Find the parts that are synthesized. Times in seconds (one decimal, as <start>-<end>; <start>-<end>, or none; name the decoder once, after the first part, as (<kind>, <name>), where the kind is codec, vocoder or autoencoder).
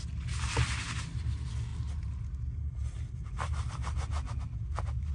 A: none